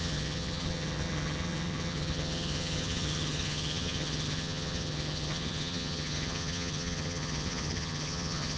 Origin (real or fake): fake